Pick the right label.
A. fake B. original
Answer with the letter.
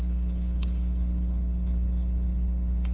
A